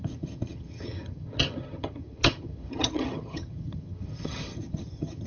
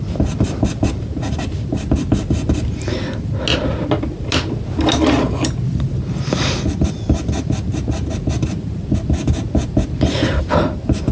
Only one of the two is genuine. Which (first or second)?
second